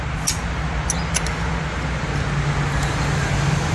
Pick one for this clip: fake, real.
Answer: real